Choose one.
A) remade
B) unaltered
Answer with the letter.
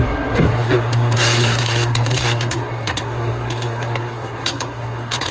A